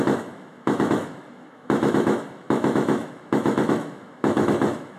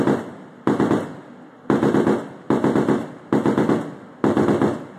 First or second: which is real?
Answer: second